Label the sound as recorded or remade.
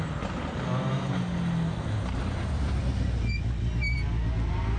recorded